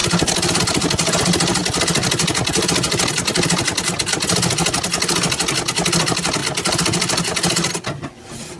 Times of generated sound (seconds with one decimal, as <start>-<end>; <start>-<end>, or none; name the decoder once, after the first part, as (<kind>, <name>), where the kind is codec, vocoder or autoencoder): none